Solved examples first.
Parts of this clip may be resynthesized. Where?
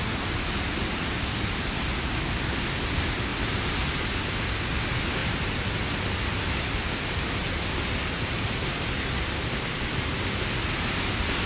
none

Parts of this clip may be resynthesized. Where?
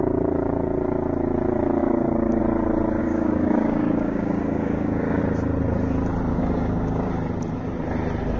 1.8-2.4 (codec, DAC); 3.0-5.2; 6.3-7.1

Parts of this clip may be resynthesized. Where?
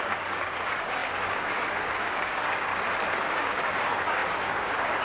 0.0-2.7 (codec, DAC); 3.2-5.0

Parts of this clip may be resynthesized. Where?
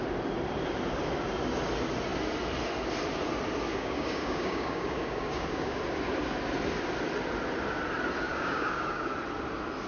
3.7-5.8 (codec, DAC); 8.3-9.1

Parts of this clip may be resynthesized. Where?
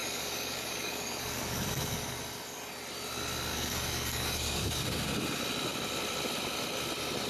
0.0-2.2 (codec, DAC); 3.5-5.1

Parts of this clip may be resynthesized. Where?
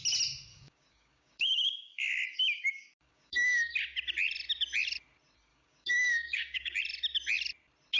0.5-3.7 (codec, DAC); 5.5-6.8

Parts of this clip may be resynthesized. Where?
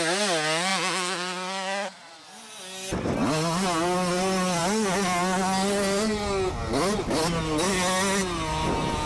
none